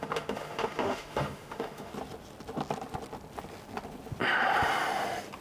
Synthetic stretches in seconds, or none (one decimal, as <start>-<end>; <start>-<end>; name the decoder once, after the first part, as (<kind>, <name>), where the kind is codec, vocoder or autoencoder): 0.0-1.9 (autoencoder, DAC-VAE)